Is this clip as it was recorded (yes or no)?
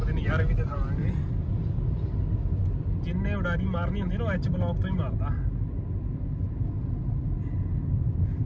yes